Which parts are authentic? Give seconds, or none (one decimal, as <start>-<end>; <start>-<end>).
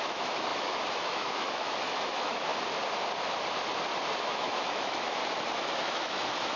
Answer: 2.5-4.2; 5.2-5.8